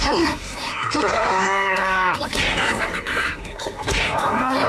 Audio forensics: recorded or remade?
remade